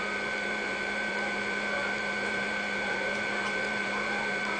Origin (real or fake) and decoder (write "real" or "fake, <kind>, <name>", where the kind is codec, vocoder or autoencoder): fake, vocoder, BigVGAN v2